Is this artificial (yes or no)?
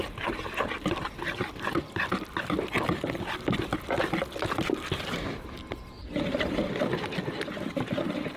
no